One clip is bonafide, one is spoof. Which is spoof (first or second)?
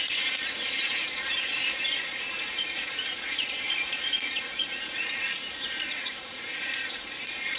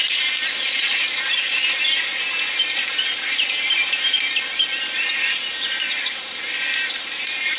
first